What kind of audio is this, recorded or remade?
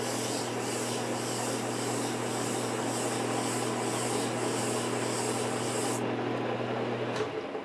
recorded